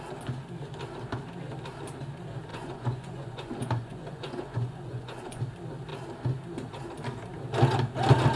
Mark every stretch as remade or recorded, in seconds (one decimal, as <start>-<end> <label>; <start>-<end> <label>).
0.0-2.5 recorded; 2.5-5.4 remade; 5.4-8.4 recorded